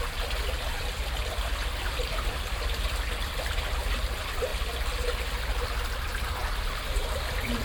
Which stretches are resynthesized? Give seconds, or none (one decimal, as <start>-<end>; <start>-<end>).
0.0-4.5; 5.4-7.6